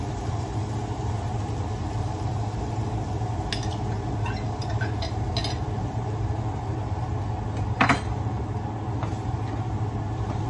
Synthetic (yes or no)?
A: no